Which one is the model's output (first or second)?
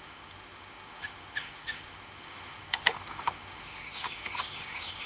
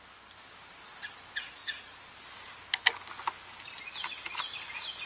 first